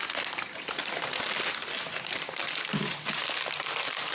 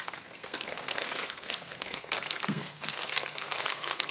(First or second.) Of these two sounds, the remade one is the second